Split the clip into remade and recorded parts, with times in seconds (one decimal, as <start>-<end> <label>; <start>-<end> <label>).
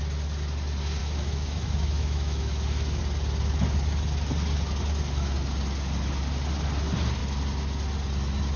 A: 0.0-1.0 recorded; 1.0-3.0 remade; 3.0-8.6 recorded